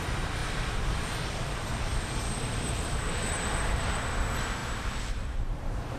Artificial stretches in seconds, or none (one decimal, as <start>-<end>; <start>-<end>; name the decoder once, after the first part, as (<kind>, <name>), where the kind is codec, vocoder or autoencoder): 0.4-4.0 (vocoder, BigVGAN v2); 4.6-5.6